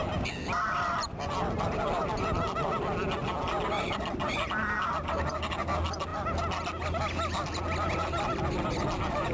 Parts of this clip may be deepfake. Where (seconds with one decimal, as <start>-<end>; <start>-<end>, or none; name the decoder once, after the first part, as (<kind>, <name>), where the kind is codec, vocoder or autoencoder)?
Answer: none